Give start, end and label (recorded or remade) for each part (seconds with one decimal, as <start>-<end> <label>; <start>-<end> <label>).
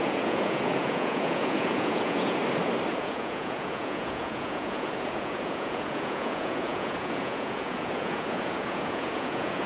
0.0-2.4 remade; 2.4-2.9 recorded; 2.9-9.7 remade